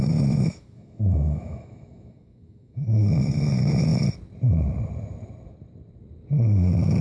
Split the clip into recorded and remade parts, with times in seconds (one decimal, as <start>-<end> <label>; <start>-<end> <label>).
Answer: 0.0-3.9 remade; 3.9-7.0 recorded